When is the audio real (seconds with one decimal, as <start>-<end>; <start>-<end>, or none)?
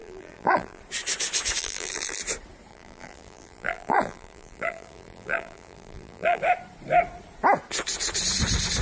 0.8-1.6; 2.2-2.7; 6.4-8.8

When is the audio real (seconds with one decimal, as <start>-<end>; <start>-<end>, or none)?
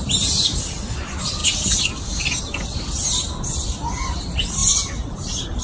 0.0-4.6